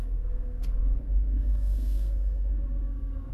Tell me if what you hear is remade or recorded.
remade